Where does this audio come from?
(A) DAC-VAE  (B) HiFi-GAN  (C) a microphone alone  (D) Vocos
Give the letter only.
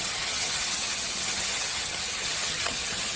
B